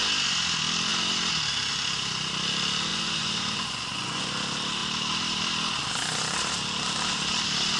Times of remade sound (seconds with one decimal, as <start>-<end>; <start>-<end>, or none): 2.9-4.3